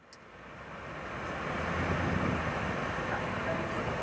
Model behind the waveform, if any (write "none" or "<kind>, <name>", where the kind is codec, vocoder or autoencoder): none